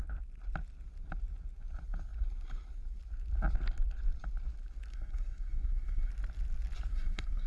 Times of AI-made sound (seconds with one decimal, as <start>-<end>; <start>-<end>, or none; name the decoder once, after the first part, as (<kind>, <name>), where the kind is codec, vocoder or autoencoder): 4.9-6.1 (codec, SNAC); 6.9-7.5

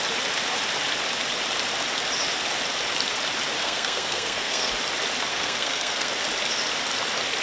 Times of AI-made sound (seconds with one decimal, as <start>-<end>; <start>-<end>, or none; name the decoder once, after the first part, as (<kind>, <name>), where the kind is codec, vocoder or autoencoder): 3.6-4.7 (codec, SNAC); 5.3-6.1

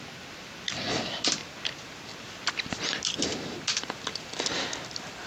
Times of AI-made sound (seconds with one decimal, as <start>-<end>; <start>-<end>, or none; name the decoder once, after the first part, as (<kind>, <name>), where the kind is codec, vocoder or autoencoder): none

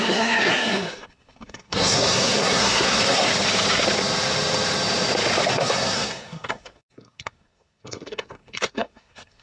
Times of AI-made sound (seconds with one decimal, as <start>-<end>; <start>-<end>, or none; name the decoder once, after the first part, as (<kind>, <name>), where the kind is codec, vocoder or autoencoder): 0.0-3.3 (codec, SNAC); 5.5-9.4

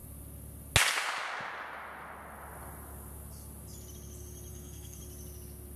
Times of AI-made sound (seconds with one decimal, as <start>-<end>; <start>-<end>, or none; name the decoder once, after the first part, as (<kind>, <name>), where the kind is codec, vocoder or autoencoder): 4.5-5.0 (codec, SNAC)

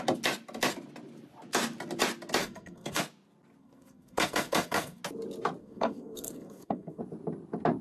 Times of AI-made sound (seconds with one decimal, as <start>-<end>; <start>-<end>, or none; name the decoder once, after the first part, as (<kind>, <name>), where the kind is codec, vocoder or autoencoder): 2.4-3.0 (codec, SNAC); 3.6-5.0; 5.6-7.0